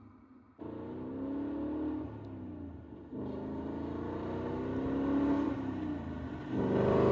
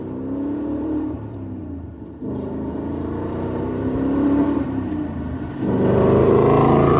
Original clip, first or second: first